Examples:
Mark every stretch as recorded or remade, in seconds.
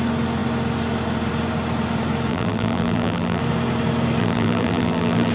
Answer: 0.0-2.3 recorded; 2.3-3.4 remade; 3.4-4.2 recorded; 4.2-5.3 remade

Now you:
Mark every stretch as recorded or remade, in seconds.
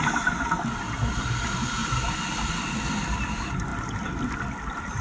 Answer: 0.0-5.0 recorded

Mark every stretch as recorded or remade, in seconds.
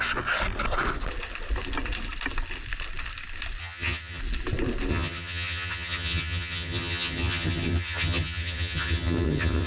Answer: 0.0-3.6 recorded; 3.6-4.2 remade; 4.2-4.9 recorded; 4.9-9.7 remade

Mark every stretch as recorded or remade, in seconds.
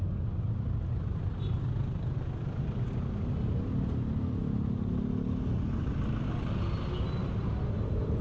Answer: 0.0-8.2 recorded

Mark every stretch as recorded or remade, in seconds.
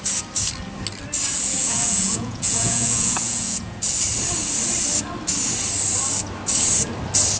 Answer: 0.0-1.6 recorded; 1.6-3.8 remade; 3.8-7.4 recorded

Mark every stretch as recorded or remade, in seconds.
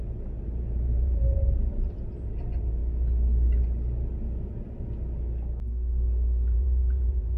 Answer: 0.0-2.8 remade; 2.8-6.5 recorded; 6.5-7.4 remade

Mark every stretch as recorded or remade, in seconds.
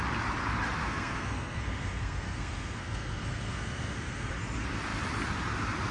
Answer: 0.0-0.8 recorded; 0.8-4.3 remade; 4.3-5.9 recorded